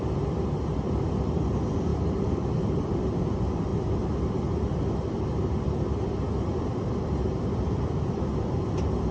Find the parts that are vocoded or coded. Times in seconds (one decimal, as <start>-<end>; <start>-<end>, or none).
none